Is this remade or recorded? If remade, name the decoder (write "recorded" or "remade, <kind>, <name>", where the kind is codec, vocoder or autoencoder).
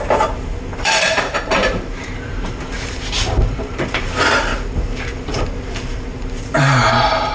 remade, vocoder, BigVGAN v2